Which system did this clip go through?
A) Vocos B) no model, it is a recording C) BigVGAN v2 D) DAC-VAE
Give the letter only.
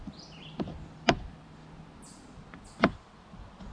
B